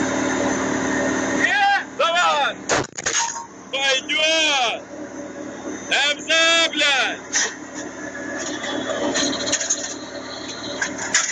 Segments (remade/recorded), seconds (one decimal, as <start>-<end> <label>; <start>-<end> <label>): 0.0-11.3 recorded